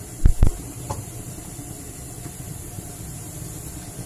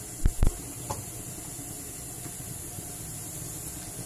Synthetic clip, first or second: first